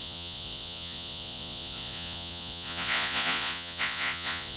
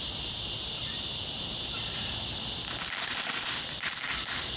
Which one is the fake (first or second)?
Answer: first